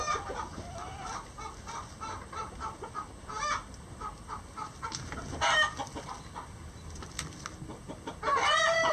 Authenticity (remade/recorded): recorded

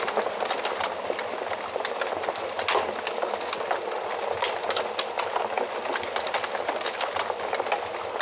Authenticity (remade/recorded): recorded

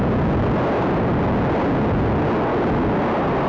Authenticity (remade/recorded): recorded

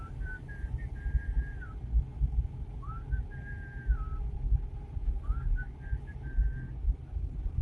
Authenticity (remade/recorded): recorded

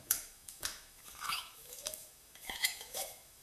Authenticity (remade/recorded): remade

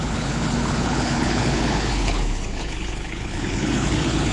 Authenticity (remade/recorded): remade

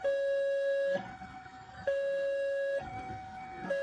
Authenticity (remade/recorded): remade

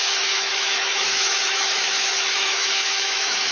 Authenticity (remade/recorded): remade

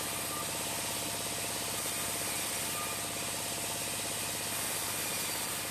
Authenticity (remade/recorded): recorded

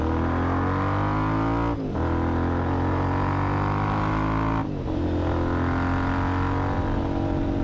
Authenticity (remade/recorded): recorded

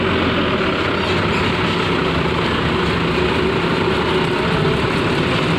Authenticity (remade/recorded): recorded